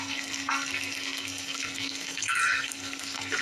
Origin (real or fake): fake